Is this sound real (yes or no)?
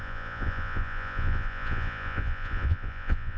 no